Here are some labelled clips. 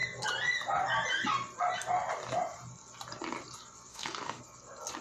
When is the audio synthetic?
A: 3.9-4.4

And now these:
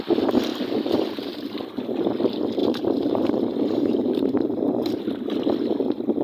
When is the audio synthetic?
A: 0.5-1.6; 2.6-5.0

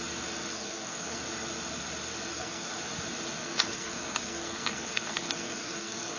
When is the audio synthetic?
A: 0.5-1.2; 2.3-2.8; 3.4-6.2

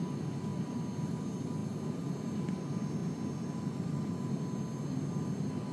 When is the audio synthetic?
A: none

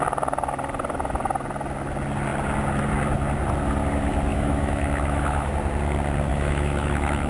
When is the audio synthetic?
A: 4.3-5.5; 6.3-7.3

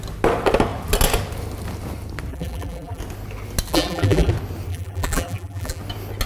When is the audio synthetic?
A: 2.3-3.0; 3.7-4.3; 4.7-5.8

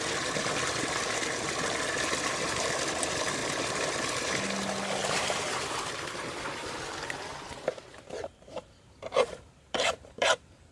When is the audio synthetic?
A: 5.0-5.9; 7.9-10.7

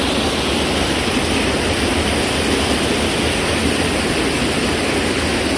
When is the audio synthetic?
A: none